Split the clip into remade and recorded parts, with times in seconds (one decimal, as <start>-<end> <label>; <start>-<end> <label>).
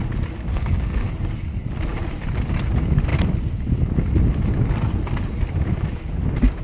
0.0-0.5 recorded; 0.5-1.1 remade; 1.1-6.6 recorded